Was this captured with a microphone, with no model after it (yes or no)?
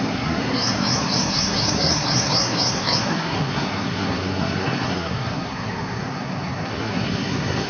no